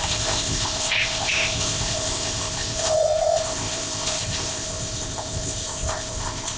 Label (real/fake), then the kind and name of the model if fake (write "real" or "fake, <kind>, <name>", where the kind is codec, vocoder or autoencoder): fake, codec, ZipCodec